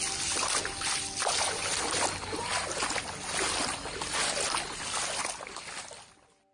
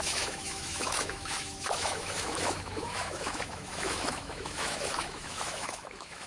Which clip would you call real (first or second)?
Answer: first